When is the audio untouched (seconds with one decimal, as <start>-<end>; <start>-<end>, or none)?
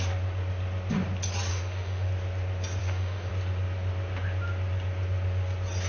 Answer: 0.0-1.5; 2.1-2.8; 3.3-5.9